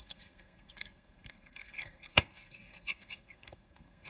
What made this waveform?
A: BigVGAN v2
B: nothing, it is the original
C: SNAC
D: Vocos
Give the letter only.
C